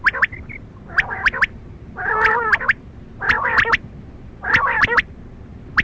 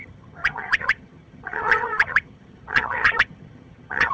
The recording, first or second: first